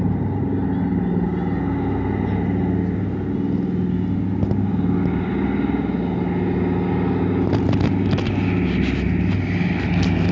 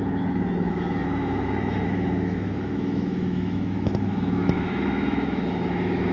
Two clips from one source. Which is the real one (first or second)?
first